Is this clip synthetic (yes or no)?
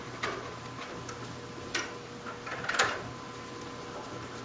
no